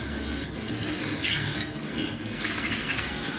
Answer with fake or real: fake